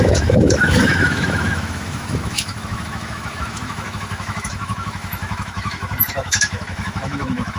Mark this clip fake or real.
fake